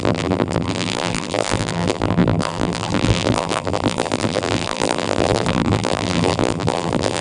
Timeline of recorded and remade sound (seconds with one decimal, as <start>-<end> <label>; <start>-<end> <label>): 0.0-7.2 remade